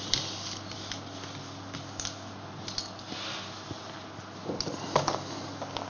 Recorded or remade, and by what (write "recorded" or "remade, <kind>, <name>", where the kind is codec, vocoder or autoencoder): recorded